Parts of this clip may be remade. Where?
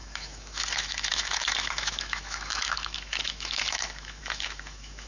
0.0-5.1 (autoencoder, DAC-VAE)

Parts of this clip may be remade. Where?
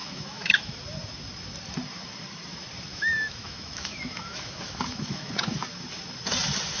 0.0-0.8 (autoencoder, DAC-VAE); 2.9-5.3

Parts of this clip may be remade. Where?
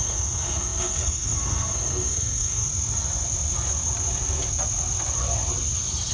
0.0-2.7 (codec, SNAC)